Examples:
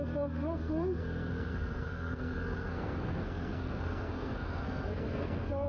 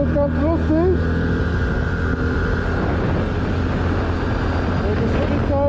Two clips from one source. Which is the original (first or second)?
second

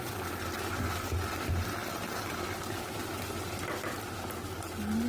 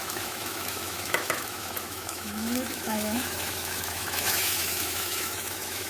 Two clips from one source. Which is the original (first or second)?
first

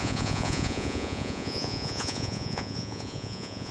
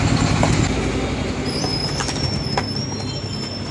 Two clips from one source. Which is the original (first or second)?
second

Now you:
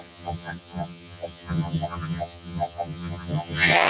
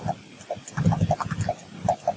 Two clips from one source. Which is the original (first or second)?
second